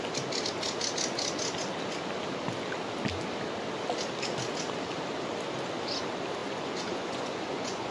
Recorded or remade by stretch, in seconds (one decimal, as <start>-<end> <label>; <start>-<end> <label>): 0.0-6.4 recorded; 6.4-7.9 remade